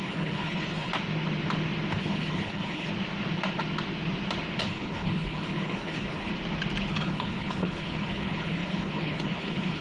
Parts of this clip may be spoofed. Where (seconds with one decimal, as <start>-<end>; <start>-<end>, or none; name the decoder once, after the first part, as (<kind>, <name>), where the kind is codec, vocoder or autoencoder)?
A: 0.0-0.9 (codec, HILCodec); 2.0-2.9; 4.6-6.3; 6.8-9.8